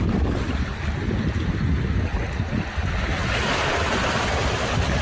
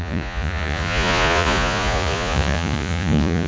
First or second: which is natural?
first